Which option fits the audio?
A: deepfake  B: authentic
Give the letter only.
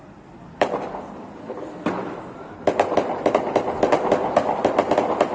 A